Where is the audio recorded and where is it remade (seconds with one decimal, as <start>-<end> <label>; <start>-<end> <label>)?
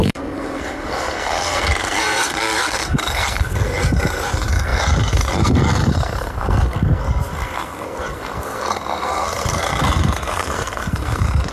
0.0-11.5 remade